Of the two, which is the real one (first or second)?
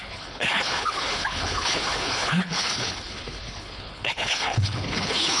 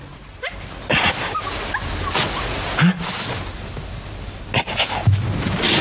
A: second